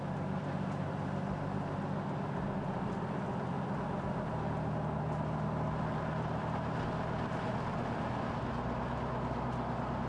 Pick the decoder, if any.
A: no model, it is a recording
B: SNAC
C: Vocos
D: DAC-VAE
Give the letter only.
A